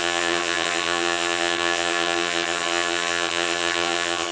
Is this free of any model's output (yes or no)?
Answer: no